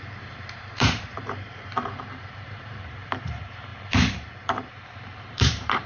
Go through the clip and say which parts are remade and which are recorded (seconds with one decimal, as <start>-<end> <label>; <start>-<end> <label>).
0.0-5.9 remade